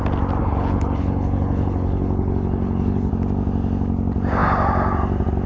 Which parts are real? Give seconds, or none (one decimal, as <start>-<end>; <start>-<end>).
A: 0.0-0.4; 3.1-5.5